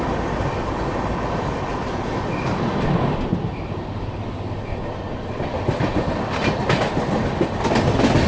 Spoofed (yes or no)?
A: no